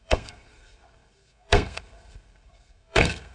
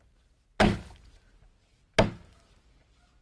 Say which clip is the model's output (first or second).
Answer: first